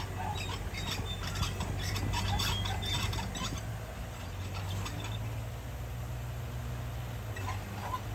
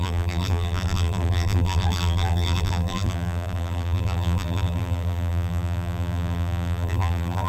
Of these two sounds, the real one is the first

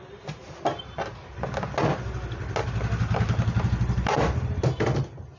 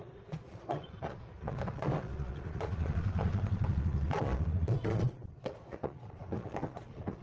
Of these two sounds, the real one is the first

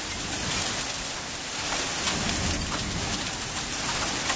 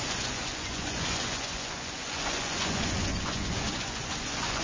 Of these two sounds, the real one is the first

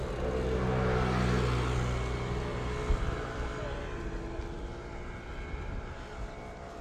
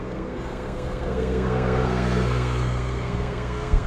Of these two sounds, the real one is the first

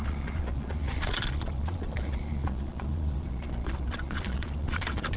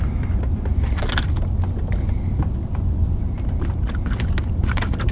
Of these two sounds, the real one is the second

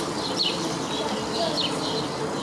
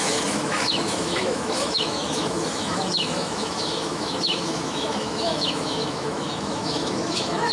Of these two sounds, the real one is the first